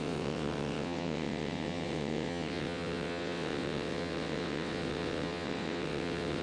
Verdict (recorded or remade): remade